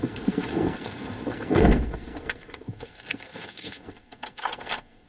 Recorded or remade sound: remade